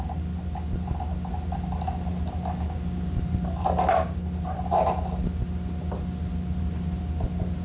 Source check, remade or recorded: recorded